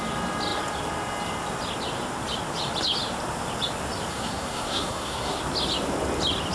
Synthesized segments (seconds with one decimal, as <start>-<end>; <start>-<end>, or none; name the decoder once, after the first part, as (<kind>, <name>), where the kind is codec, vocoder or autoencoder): 4.1-5.4 (codec, SNAC)